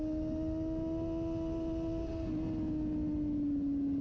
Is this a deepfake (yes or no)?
no